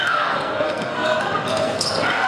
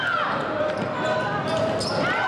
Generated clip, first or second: first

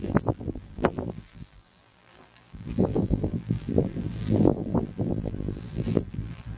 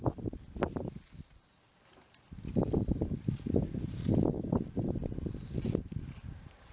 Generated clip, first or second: first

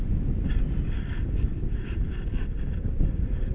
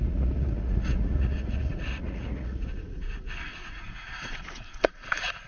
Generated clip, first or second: second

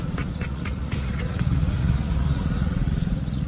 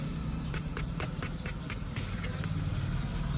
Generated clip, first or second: first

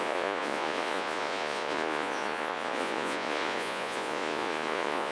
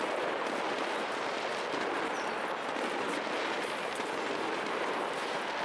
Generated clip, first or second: first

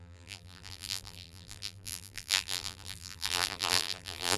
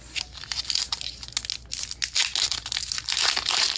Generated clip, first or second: first